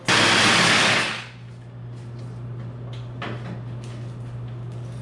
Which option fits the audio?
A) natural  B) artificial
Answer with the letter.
A